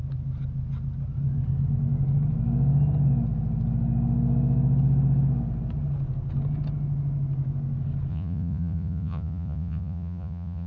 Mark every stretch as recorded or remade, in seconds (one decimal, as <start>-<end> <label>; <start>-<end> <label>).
0.0-8.1 recorded; 8.1-10.7 remade